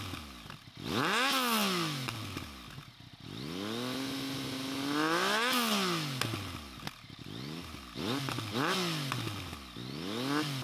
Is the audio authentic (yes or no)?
yes